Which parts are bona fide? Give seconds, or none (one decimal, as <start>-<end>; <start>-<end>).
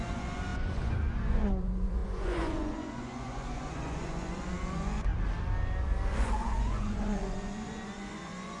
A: 5.1-6.1